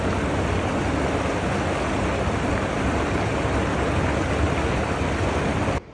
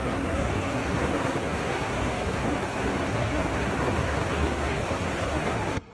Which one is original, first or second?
first